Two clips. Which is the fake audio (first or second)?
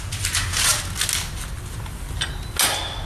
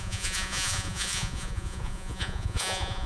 second